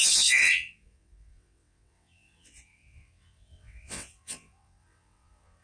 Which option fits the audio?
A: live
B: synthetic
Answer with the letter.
B